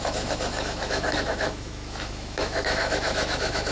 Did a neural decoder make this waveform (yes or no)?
yes